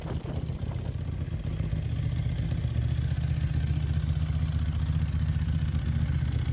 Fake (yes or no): no